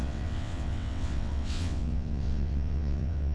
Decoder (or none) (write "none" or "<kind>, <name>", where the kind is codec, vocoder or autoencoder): vocoder, WaveNeXt